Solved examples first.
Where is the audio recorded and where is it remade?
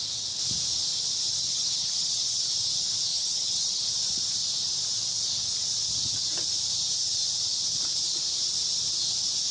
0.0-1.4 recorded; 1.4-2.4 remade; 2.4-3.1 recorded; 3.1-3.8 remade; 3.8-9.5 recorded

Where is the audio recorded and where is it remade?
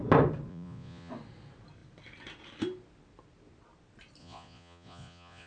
0.0-0.5 recorded; 0.5-1.1 remade; 1.1-4.2 recorded; 4.2-5.5 remade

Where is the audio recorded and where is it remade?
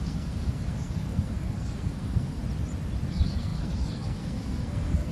0.0-2.4 remade; 2.4-3.1 recorded; 3.1-5.1 remade